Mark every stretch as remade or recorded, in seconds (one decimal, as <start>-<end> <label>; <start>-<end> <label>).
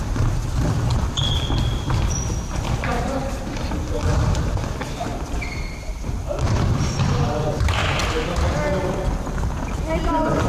0.0-0.9 recorded; 0.9-3.2 remade; 3.2-5.1 recorded; 5.1-7.5 remade; 7.5-10.5 recorded